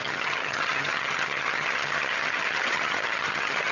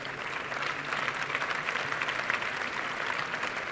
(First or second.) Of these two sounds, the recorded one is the second